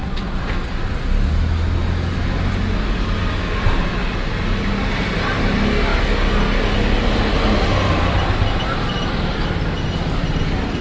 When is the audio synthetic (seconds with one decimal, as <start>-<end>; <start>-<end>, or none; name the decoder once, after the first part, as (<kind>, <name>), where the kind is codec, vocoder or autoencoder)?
none